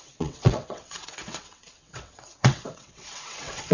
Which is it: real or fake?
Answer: fake